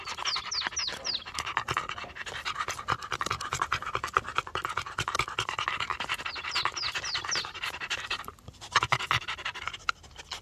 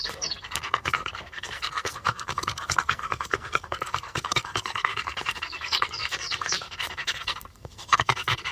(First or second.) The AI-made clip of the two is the second